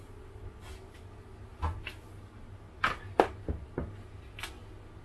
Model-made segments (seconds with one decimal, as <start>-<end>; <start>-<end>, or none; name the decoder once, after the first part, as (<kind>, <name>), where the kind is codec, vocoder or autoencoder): none